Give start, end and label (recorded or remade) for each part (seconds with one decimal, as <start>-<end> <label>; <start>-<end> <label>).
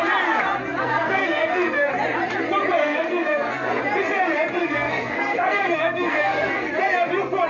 0.0-0.8 recorded; 0.8-1.9 remade; 1.9-2.8 recorded; 2.8-3.8 remade; 3.8-4.6 recorded; 4.6-6.7 remade; 6.7-7.5 recorded